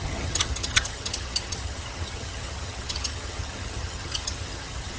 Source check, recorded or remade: remade